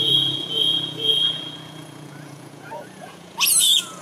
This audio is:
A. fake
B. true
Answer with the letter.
A